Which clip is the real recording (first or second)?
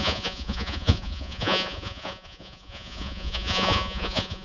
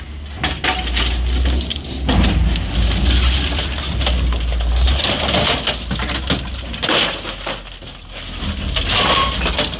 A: second